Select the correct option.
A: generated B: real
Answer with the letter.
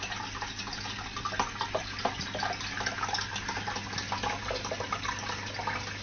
B